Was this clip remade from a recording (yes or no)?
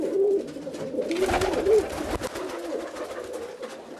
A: no